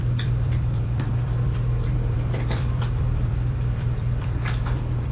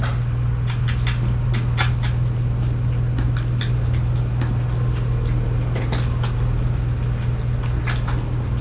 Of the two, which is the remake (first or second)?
first